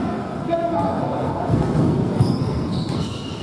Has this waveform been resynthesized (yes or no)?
yes